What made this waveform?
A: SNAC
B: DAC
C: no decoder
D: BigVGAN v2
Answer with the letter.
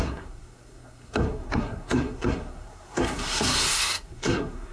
A